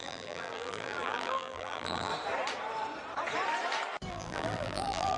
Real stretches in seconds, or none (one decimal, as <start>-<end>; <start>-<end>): 2.1-4.1